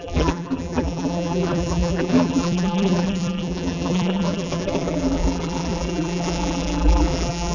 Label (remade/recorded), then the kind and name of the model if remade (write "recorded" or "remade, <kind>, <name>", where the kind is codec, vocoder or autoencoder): remade, vocoder, BigVGAN v2